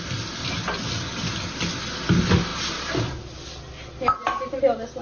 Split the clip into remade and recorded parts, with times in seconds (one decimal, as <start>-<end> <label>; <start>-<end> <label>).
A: 0.0-5.0 recorded